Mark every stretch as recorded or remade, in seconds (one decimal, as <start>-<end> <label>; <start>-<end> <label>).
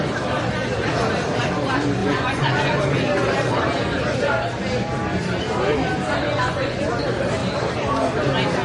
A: 0.0-2.0 recorded; 2.0-2.7 remade; 2.7-6.3 recorded; 6.3-6.9 remade; 6.9-8.6 recorded